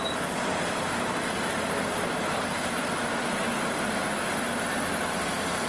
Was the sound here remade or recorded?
recorded